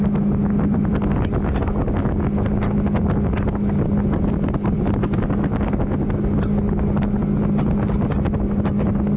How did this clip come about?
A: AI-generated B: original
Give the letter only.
B